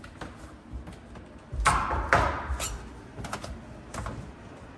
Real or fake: real